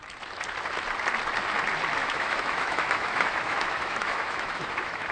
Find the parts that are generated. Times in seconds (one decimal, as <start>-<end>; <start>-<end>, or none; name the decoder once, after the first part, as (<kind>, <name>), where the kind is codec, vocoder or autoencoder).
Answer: 2.0-5.1 (autoencoder, DAC-VAE)